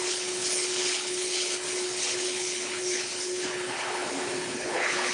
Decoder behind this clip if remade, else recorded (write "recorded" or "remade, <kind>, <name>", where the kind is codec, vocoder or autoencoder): remade, codec, HILCodec